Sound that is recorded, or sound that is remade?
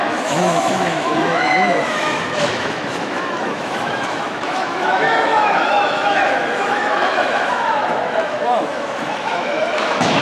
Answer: remade